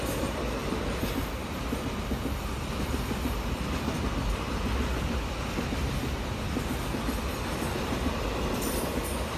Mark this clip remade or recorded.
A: recorded